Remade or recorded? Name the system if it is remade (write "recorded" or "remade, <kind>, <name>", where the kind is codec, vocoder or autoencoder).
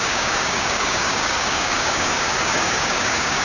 remade, codec, DAC